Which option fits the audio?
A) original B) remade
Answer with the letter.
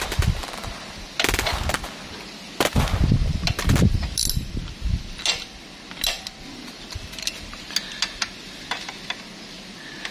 A